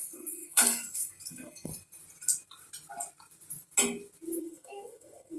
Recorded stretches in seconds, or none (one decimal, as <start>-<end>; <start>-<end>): 1.7-4.4